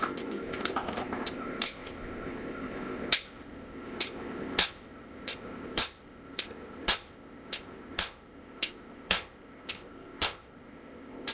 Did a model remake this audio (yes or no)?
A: yes